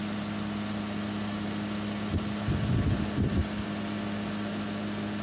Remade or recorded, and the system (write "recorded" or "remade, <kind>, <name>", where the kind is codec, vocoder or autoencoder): recorded